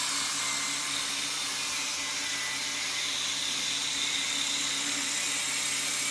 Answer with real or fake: real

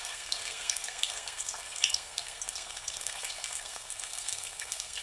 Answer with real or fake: fake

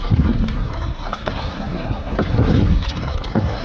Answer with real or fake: fake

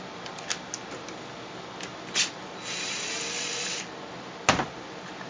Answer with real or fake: real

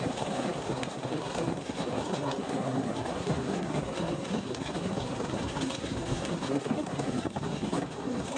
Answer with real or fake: fake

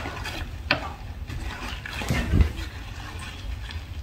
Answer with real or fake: real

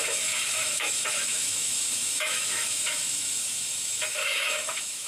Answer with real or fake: fake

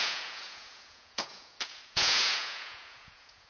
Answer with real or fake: fake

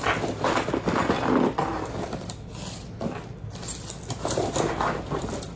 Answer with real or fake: real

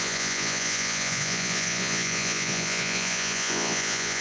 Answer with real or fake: fake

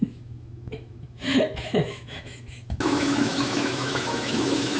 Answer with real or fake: fake